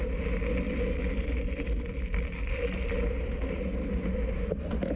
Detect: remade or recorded recorded